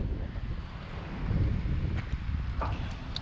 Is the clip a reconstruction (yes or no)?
no